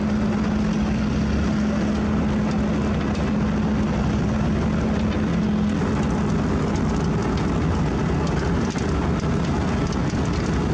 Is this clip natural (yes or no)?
yes